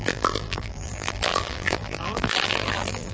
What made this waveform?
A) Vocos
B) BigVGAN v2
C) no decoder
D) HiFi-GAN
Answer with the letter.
B